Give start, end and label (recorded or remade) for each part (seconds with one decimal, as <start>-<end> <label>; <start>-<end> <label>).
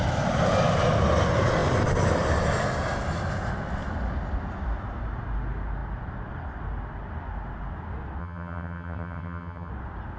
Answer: 0.0-8.2 recorded; 8.2-9.7 remade; 9.7-10.2 recorded